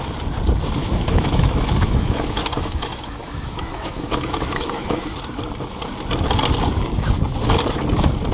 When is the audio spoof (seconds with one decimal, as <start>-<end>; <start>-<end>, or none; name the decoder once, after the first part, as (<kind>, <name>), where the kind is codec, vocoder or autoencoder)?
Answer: 0.8-5.2 (autoencoder, DAC-VAE)

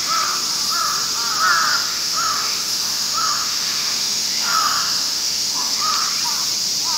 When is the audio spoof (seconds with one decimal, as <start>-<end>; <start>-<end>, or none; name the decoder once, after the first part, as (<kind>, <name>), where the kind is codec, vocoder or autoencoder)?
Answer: 1.7-5.9 (autoencoder, DAC-VAE)

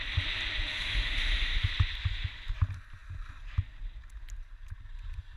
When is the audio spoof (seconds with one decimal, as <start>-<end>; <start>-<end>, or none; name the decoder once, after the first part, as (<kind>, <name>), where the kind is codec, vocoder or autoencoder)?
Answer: 0.7-1.7 (autoencoder, DAC-VAE)

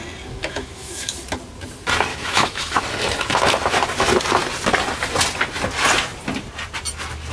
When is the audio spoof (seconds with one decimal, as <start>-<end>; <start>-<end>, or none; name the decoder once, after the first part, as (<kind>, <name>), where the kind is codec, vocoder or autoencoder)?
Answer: 0.4-1.1 (autoencoder, DAC-VAE); 2.1-2.8

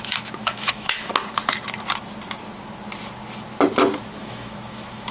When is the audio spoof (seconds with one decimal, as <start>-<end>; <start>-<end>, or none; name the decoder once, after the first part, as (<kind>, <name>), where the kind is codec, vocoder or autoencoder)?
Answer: 0.0-1.1 (autoencoder, DAC-VAE); 4.2-5.1

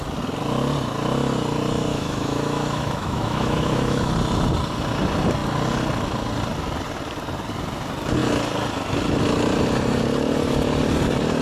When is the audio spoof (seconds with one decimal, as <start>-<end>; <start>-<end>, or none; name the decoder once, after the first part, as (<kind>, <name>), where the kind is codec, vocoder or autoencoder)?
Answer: 1.9-4.1 (autoencoder, DAC-VAE)

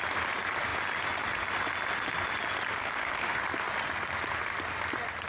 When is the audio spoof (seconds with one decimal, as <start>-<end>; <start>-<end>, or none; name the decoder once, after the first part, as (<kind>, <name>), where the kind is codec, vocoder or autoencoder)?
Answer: 2.8-3.4 (autoencoder, DAC-VAE)